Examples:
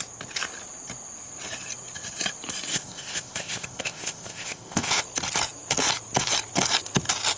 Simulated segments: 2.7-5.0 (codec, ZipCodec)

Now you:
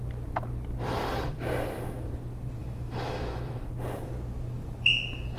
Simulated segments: 2.6-3.7 (autoencoder, DAC-VAE)

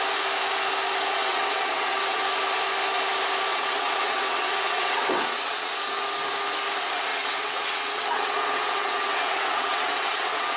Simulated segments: 1.2-2.2 (vocoder, WaveNeXt); 3.5-5.7; 7.1-10.6

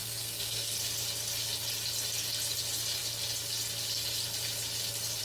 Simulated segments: 0.0-0.7 (codec, SNAC)